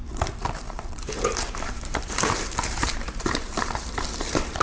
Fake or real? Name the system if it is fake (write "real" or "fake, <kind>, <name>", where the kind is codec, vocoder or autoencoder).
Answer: fake, vocoder, BigVGAN v2